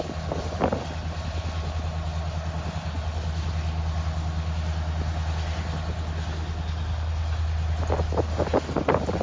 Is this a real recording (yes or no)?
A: yes